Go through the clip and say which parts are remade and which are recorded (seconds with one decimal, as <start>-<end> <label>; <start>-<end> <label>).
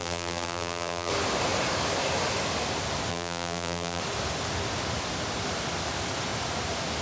0.0-1.1 remade; 1.1-3.1 recorded; 3.1-4.0 remade; 4.0-7.0 recorded